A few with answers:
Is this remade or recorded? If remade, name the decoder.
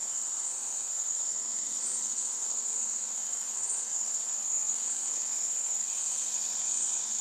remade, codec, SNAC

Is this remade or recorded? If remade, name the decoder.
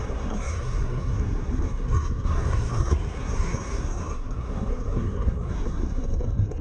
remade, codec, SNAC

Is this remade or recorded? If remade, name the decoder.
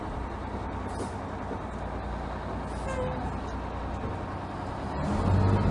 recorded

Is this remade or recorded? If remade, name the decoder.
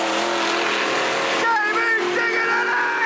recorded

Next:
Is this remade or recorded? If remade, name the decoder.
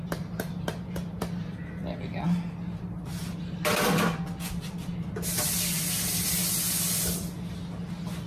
recorded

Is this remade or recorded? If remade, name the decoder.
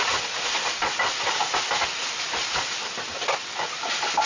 recorded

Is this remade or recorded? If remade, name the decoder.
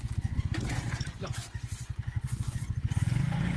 remade, vocoder, Vocos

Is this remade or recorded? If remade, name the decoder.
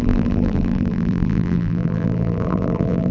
remade, vocoder, BigVGAN v2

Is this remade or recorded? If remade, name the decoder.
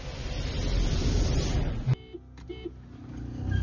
recorded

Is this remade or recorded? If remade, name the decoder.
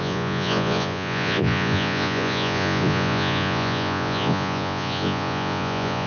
remade, vocoder, Vocos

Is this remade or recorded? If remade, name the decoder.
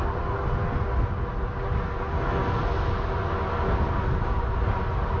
recorded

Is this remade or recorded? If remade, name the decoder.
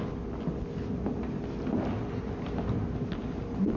recorded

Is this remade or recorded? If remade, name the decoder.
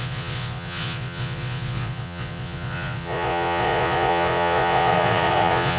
remade, vocoder, Vocos